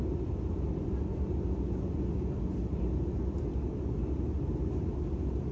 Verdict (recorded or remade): remade